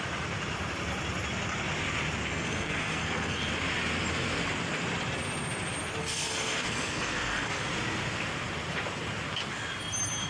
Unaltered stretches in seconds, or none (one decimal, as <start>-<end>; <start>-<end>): 0.0-2.3; 3.5-6.0; 7.7-10.3